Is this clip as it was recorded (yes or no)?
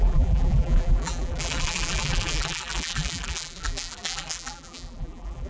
no